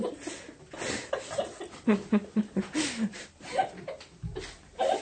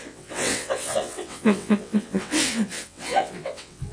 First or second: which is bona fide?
first